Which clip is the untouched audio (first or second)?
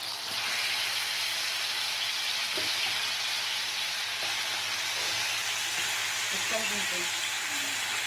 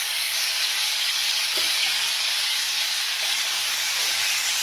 first